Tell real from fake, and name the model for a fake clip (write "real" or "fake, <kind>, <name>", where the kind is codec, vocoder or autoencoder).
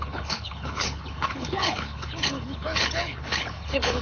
fake, codec, HILCodec